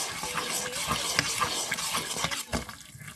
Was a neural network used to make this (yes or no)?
no